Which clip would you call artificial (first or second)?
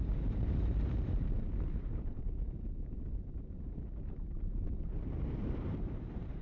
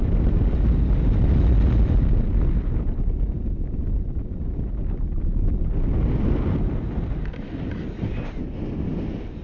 first